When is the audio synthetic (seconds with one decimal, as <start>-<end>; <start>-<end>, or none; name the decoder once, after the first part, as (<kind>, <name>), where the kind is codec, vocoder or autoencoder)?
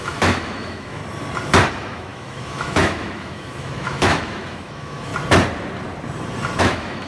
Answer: 0.0-1.0 (autoencoder, DAC-VAE); 1.7-5.1; 6.6-7.1